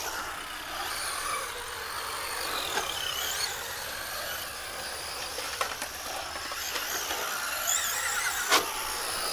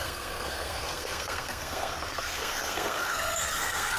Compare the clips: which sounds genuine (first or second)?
first